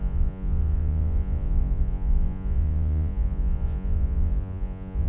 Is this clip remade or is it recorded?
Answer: remade